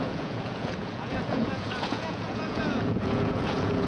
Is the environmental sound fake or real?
fake